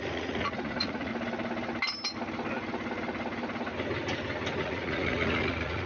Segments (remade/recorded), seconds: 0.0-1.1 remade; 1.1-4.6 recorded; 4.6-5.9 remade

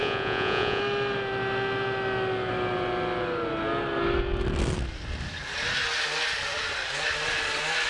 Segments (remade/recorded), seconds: 0.0-0.8 remade; 0.8-7.9 recorded

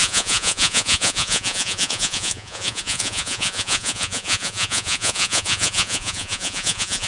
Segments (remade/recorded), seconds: 0.0-7.1 remade

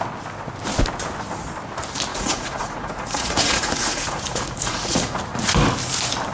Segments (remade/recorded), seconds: 0.0-2.1 recorded; 2.1-5.2 remade; 5.2-6.3 recorded

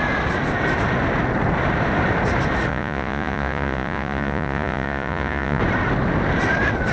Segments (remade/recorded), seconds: 0.0-2.7 recorded; 2.7-5.6 remade; 5.6-6.9 recorded

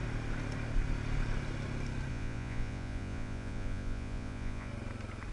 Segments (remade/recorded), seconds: 0.0-2.1 recorded; 2.1-4.7 remade; 4.7-5.3 recorded